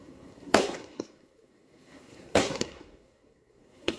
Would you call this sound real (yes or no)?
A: no